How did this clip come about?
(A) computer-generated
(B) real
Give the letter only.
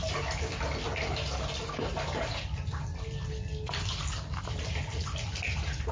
B